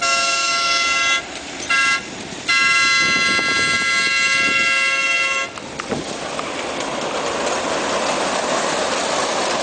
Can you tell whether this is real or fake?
real